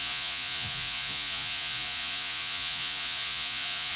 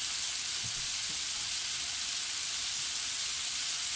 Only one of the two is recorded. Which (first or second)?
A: second